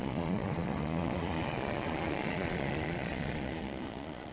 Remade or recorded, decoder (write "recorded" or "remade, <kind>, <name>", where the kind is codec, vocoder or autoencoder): remade, vocoder, Vocos